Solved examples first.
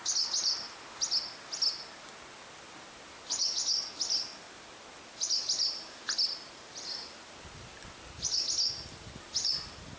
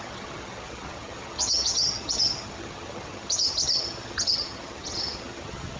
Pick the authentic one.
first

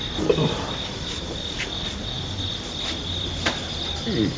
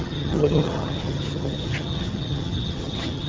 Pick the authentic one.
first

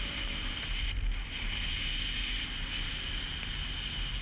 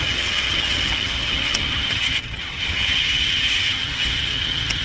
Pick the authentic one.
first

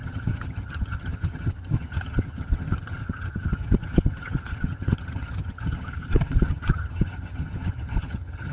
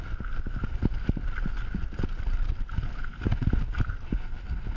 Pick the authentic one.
second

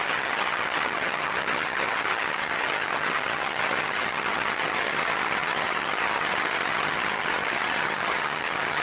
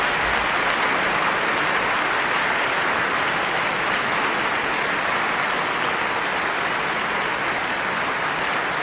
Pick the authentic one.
second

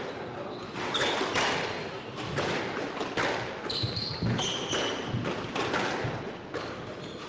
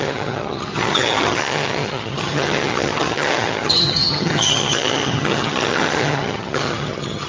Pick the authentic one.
first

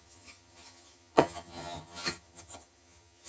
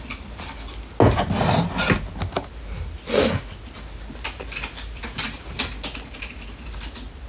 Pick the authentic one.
second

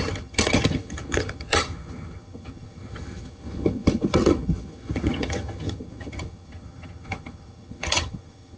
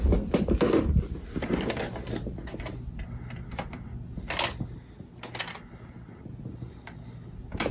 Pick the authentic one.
second